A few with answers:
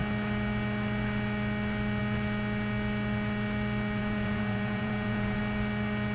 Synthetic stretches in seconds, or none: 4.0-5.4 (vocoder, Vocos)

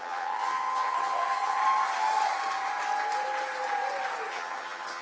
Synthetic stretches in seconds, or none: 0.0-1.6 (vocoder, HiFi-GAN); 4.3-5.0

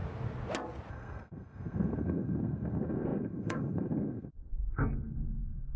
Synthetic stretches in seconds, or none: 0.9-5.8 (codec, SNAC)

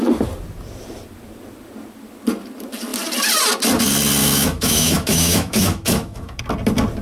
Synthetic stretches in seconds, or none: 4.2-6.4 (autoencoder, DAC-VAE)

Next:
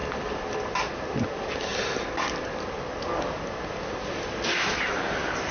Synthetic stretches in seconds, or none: none

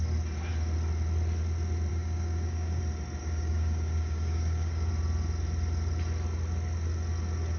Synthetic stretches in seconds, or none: 1.9-2.8 (codec, DAC); 3.2-4.9

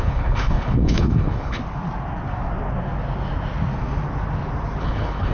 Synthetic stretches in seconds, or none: 0.0-1.6 (codec, HILCodec); 4.8-5.3

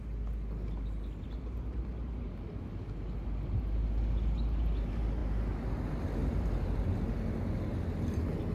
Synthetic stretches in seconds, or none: none